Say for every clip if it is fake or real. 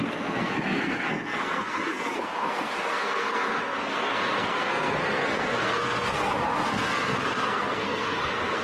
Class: fake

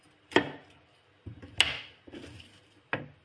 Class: real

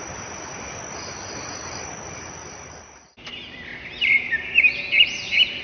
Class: real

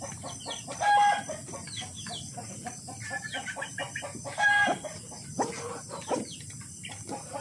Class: real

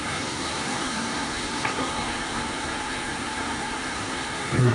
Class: fake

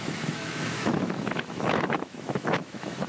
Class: fake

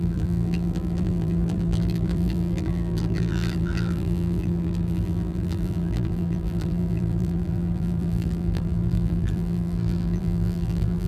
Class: fake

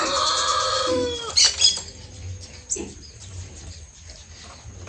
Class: real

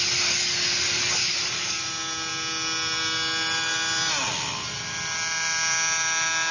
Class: real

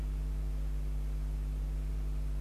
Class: real